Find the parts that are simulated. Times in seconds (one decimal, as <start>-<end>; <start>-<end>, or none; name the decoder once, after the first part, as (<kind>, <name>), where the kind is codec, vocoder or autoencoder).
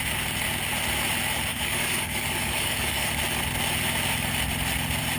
1.5-3.1 (codec, DAC)